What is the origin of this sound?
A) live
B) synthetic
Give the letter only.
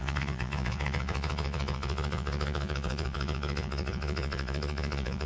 B